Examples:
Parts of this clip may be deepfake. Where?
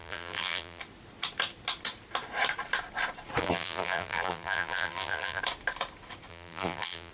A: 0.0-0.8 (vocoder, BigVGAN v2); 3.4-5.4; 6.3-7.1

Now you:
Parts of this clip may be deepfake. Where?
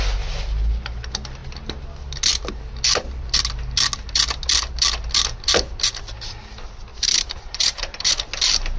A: 6.9-8.1 (vocoder, BigVGAN v2)